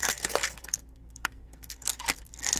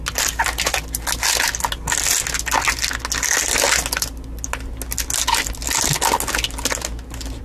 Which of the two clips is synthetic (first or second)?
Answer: first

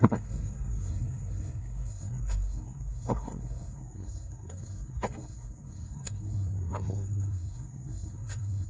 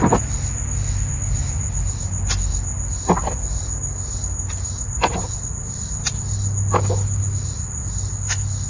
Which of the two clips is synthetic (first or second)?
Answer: first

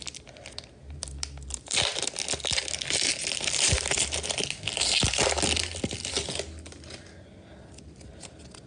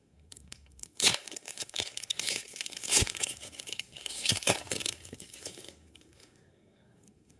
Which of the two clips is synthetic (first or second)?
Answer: second